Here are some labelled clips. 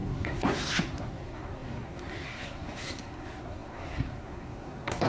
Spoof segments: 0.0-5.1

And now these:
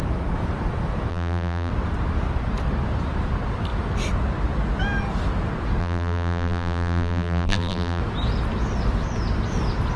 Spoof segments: 1.1-1.7; 5.8-8.0

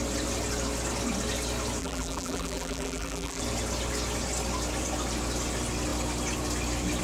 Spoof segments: 1.8-3.4

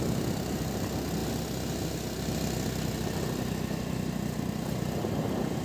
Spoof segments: none

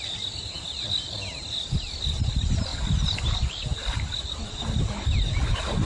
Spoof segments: none

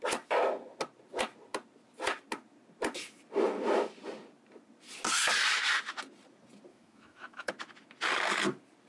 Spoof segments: 6.7-7.5

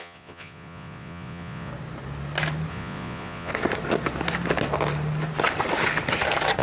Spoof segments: 0.0-1.7; 2.7-3.5